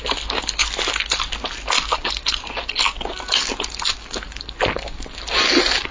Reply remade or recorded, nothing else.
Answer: recorded